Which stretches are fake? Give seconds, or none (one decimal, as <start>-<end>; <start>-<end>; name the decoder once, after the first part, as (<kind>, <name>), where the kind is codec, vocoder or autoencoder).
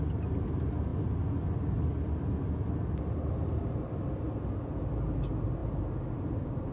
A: none